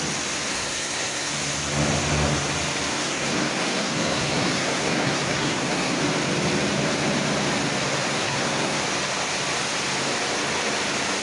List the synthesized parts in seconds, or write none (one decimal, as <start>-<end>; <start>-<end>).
0.5-1.3; 2.9-6.0; 8.1-8.8